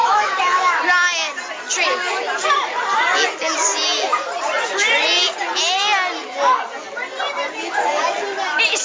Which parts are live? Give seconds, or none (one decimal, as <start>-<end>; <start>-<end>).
0.8-8.8